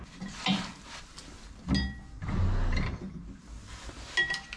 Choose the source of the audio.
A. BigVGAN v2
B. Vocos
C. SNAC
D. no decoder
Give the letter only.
D